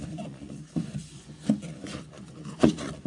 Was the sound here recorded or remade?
remade